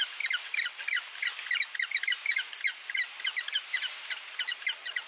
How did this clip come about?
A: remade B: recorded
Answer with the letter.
B